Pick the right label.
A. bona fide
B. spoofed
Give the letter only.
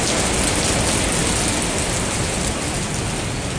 A